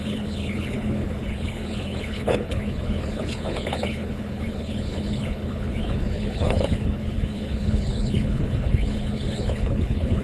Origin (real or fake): fake